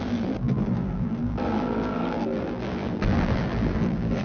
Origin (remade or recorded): remade